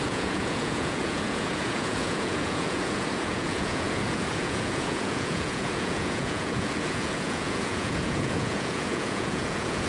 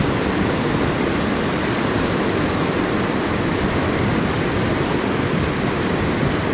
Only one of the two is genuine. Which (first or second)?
second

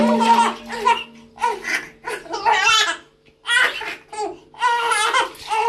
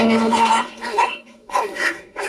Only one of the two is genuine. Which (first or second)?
first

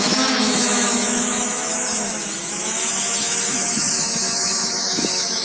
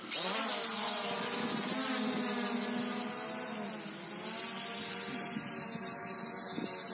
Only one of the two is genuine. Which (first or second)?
second